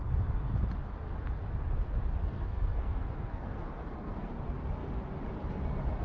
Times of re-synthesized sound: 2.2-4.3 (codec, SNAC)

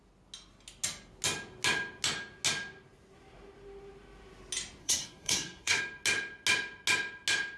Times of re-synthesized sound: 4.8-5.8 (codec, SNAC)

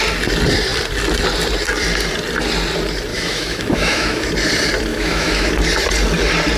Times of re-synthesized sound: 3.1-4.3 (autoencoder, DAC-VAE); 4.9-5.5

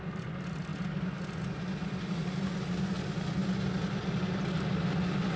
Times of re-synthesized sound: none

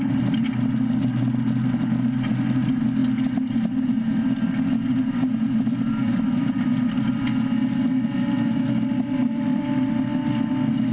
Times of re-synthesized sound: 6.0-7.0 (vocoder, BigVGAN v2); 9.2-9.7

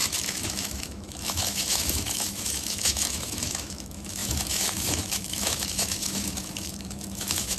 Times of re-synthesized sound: 0.0-7.6 (autoencoder, DAC-VAE)

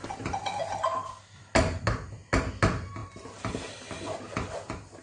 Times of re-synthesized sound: none